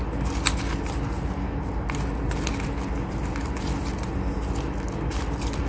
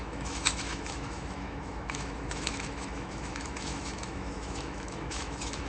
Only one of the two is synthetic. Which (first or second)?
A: second